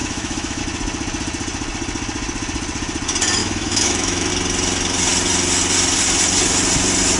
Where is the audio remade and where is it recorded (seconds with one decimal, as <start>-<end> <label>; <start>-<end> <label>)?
0.0-0.6 remade; 0.6-3.4 recorded; 3.4-4.3 remade; 4.3-7.2 recorded